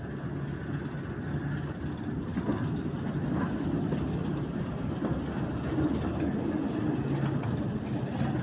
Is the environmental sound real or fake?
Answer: real